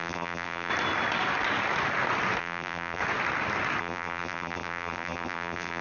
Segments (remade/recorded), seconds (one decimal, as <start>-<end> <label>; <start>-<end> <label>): 0.0-0.7 remade; 0.7-2.4 recorded; 2.4-3.0 remade; 3.0-3.8 recorded; 3.8-5.8 remade